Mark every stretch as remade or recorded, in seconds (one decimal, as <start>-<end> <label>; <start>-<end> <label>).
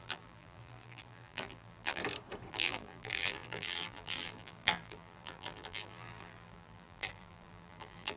0.0-2.0 remade; 2.0-2.5 recorded; 2.5-8.2 remade